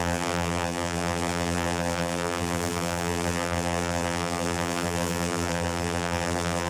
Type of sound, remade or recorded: remade